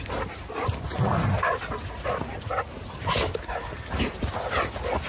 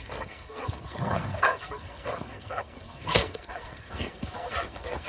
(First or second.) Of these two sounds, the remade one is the second